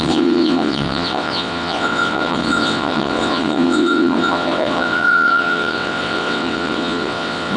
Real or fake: fake